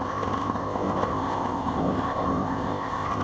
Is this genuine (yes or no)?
no